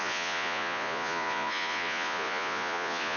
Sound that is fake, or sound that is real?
fake